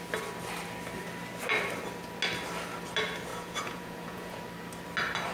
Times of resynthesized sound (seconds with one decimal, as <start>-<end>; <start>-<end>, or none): 3.3-4.4